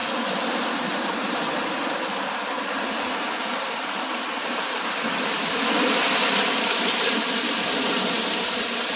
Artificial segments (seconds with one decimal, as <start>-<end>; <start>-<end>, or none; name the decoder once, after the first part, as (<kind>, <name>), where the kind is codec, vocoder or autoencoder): none